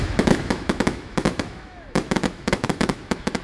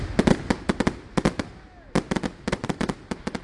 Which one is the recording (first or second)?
second